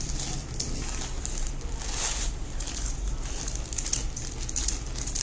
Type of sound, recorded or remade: recorded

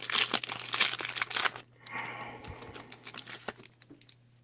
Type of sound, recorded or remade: recorded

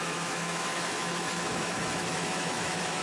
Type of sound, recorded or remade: remade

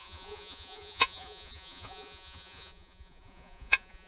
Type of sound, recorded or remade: remade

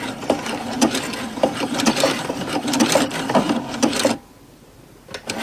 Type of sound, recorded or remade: recorded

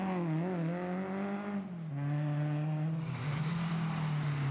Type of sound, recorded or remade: recorded